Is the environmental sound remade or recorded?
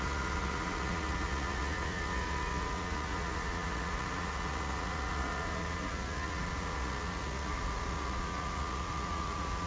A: remade